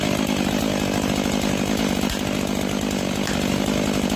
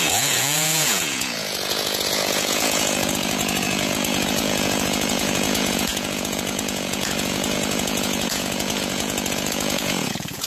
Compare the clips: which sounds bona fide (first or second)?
first